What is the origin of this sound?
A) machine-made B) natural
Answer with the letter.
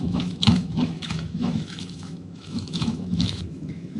A